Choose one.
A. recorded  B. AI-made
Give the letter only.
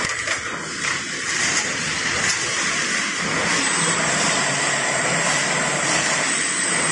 B